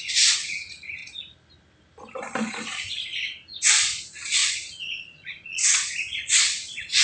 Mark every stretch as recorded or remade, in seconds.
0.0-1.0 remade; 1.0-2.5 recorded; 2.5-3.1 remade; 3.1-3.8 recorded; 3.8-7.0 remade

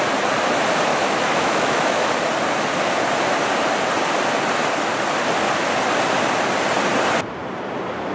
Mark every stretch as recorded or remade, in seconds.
0.0-0.9 recorded; 0.9-2.1 remade; 2.1-8.1 recorded

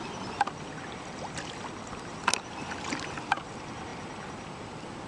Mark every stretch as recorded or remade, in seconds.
0.0-2.1 recorded; 2.1-2.9 remade; 2.9-3.9 recorded; 3.9-5.1 remade

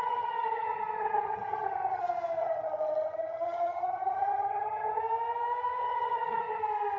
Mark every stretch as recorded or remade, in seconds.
0.0-2.0 remade; 2.0-2.4 recorded; 2.4-5.0 remade; 5.0-5.8 recorded; 5.8-6.6 remade; 6.6-7.0 recorded